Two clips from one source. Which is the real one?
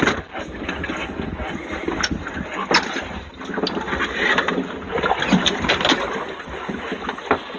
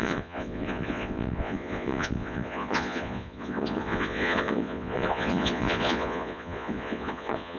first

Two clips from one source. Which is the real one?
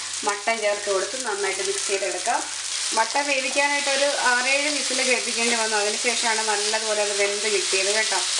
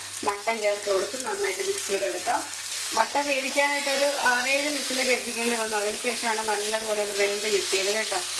first